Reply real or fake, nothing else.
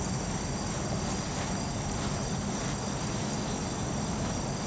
real